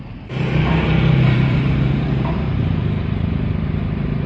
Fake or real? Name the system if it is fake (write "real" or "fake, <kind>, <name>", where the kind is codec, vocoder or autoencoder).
fake, vocoder, BigVGAN v2